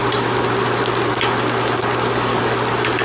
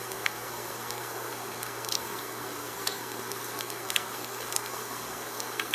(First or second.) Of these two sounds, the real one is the first